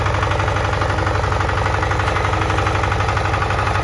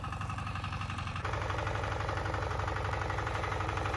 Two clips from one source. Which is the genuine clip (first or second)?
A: first